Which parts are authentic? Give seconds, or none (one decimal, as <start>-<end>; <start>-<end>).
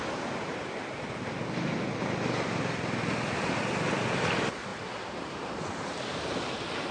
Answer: 0.0-4.7; 6.3-6.9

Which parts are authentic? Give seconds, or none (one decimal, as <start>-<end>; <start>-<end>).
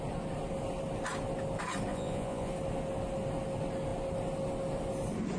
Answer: 0.0-1.9; 2.5-5.4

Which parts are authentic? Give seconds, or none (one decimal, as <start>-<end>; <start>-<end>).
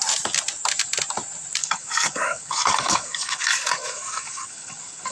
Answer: 0.0-1.6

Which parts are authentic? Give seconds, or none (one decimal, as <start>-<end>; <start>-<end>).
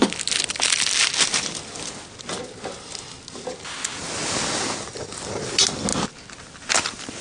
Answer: 0.0-7.2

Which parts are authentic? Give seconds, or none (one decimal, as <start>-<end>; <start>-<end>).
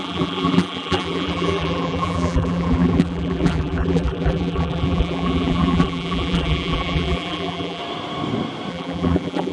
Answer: 7.8-8.7